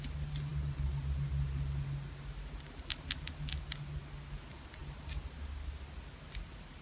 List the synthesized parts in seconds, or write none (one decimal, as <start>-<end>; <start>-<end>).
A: none